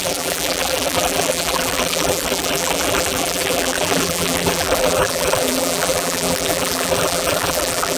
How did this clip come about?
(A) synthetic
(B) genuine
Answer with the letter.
A